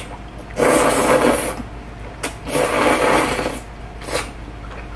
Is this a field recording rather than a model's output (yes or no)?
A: yes